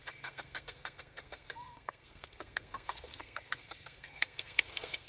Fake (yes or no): yes